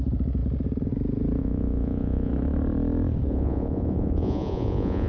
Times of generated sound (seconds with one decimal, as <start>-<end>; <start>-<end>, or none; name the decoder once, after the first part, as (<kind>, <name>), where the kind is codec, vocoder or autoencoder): 1.4-2.3 (vocoder, Vocos); 3.3-5.1